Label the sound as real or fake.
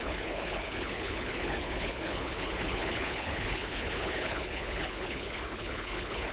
fake